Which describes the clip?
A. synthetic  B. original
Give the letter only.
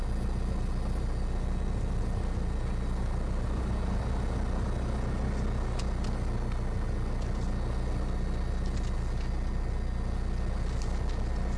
B